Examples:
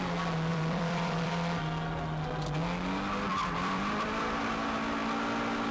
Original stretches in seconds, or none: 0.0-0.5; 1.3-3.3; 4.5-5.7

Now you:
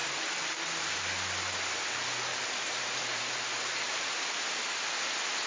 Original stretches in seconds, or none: 0.0-2.3; 4.1-5.5

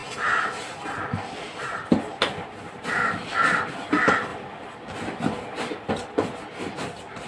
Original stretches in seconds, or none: 0.0-7.3

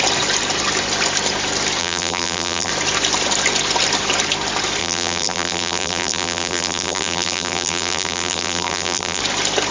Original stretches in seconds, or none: 0.0-1.8; 2.7-4.8; 9.2-9.7

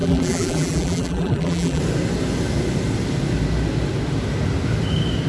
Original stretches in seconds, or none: 1.8-5.3

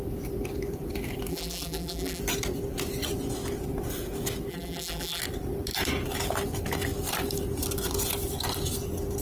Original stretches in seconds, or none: 0.0-1.3; 2.2-4.5; 5.2-9.2

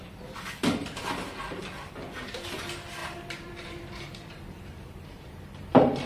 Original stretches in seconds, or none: 0.0-3.0

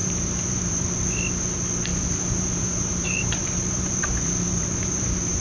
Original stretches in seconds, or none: 0.8-1.9